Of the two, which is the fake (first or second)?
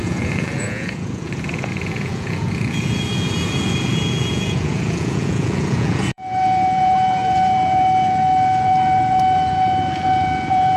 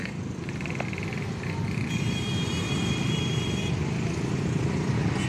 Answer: first